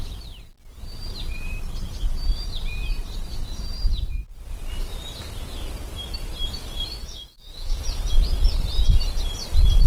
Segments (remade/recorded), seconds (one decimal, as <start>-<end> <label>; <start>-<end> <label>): 0.0-7.0 recorded; 7.0-7.8 remade; 7.8-9.9 recorded